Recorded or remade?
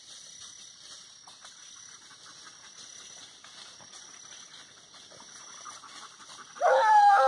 recorded